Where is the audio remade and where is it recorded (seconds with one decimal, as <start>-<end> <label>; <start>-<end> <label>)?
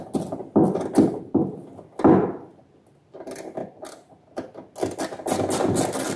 0.0-6.2 recorded